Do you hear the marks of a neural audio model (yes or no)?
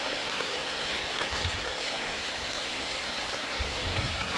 yes